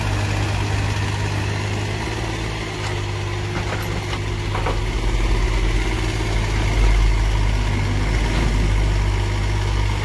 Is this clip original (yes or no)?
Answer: yes